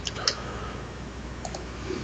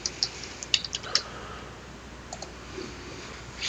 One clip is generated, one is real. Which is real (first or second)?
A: second